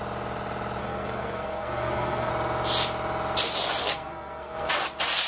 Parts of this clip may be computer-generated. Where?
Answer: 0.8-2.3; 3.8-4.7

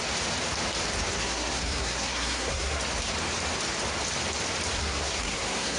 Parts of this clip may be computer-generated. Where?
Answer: 1.2-2.8; 4.8-5.8

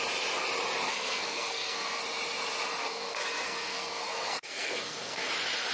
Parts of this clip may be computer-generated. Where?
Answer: 0.9-2.0; 2.8-5.3

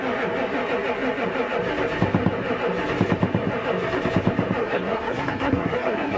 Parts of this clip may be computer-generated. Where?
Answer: 4.6-6.2

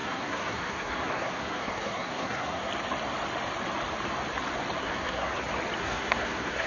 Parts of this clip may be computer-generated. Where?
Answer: 0.0-2.7; 4.8-5.3; 5.8-6.7

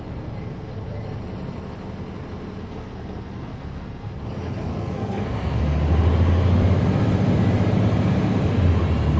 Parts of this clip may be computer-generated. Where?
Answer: 2.6-4.1; 4.7-5.6

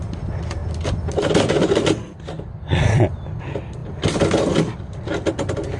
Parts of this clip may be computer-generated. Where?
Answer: none